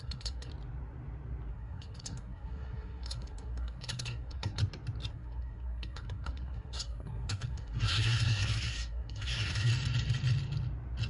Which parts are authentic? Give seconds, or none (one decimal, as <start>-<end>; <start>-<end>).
0.5-1.5; 4.6-5.1; 9.7-11.1